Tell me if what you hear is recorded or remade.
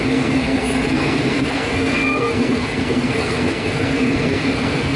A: remade